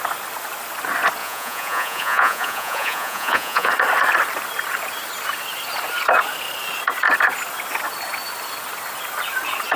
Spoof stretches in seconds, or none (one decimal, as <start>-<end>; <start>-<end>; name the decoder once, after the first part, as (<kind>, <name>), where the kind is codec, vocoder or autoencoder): 1.2-3.7 (vocoder, Vocos)